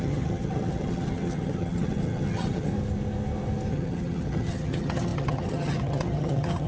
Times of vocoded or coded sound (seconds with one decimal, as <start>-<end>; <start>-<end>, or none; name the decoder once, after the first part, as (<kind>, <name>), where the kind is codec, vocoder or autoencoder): 0.0-2.7 (vocoder, HiFi-GAN); 3.7-6.7